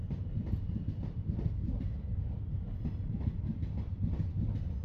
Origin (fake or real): real